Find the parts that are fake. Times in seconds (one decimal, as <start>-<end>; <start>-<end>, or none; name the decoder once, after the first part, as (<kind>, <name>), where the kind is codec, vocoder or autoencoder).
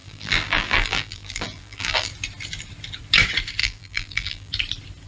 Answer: 0.0-2.1 (vocoder, BigVGAN v2); 3.6-4.5